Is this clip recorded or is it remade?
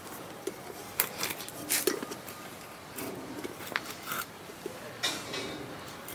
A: remade